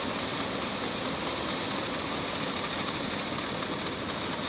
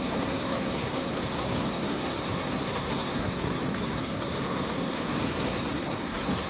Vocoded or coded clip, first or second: second